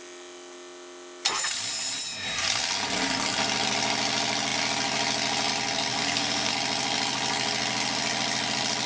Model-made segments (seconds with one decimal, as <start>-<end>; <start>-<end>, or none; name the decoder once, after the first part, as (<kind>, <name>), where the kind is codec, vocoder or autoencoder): 6.0-6.5 (codec, SNAC)

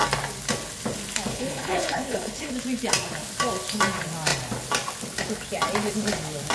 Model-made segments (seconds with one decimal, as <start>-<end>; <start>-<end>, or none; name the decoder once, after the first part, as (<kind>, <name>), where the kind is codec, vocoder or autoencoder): 1.3-2.5 (codec, HILCodec)

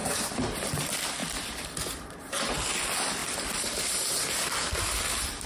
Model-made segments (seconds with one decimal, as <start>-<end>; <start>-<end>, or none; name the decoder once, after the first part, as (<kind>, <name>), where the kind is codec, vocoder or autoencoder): 0.0-0.7 (vocoder, BigVGAN v2); 1.2-2.1; 3.2-5.1

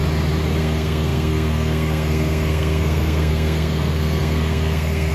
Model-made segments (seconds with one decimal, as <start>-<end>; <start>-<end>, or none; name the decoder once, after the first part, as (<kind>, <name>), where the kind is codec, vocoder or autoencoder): 0.6-5.1 (codec, SNAC)

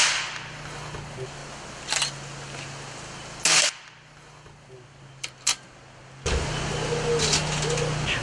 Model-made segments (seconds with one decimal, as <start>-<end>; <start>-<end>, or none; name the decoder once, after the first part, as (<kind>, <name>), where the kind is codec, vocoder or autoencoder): none